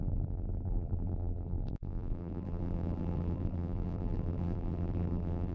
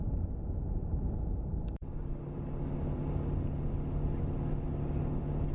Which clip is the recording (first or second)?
second